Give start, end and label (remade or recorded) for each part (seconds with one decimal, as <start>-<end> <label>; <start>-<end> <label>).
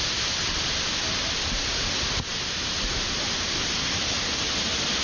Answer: 0.0-5.0 recorded